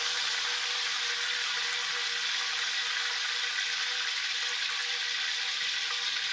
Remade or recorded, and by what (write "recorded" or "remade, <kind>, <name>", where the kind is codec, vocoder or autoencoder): recorded